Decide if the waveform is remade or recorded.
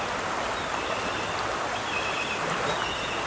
recorded